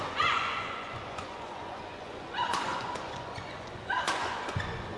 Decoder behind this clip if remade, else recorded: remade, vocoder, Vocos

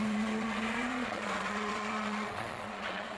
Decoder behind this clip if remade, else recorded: remade, vocoder, Vocos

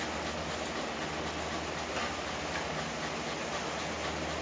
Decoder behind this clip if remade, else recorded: recorded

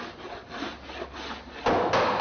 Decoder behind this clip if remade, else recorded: recorded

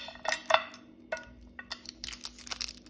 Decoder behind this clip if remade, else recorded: recorded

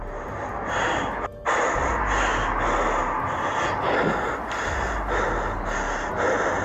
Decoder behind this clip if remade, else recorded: recorded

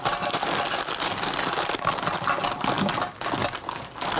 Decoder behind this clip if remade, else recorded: recorded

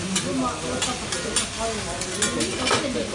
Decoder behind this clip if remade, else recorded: recorded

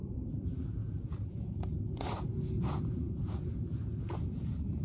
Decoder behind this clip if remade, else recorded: remade, vocoder, Vocos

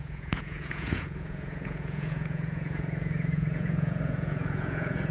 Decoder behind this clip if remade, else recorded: remade, vocoder, Vocos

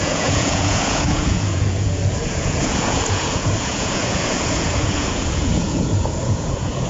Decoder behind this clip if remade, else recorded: remade, vocoder, Vocos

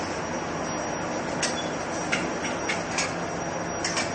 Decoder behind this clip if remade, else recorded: recorded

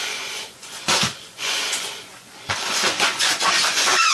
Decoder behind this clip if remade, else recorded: remade, vocoder, Vocos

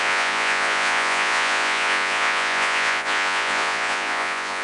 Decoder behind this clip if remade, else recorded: remade, vocoder, Vocos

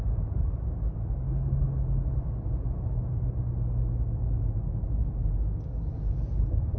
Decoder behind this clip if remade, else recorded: recorded